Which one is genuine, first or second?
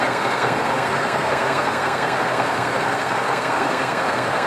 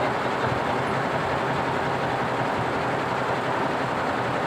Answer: second